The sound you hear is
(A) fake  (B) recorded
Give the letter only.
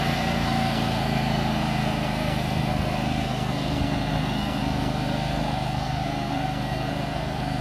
A